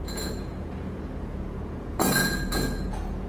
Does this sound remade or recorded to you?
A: remade